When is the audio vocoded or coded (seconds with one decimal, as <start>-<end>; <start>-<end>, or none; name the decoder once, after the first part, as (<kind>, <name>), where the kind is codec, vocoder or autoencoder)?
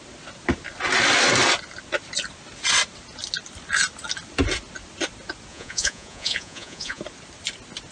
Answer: 5.5-7.0 (vocoder, Vocos)